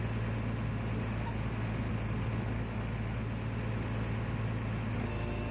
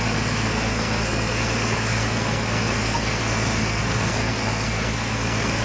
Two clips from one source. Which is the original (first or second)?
first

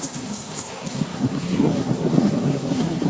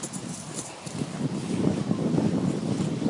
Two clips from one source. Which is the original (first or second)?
second